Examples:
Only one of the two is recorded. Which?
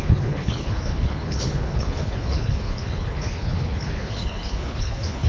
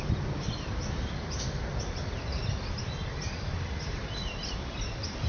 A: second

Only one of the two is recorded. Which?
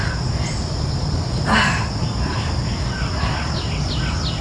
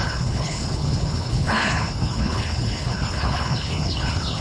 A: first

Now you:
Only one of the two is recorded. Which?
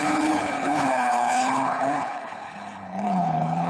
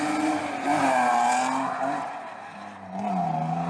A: second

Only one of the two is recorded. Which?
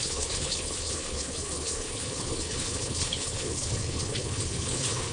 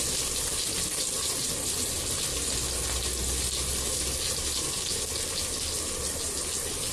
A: second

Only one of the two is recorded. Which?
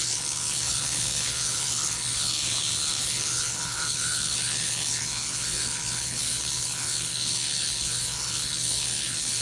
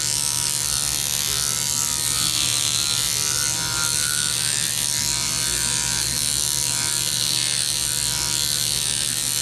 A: second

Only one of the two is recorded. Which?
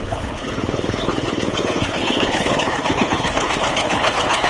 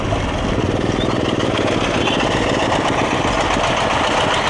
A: second